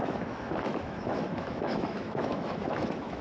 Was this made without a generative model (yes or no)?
no